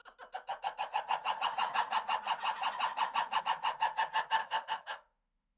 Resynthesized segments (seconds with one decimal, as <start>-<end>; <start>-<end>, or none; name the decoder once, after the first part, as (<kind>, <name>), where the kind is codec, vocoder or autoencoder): 4.4-5.6 (autoencoder, DAC-VAE)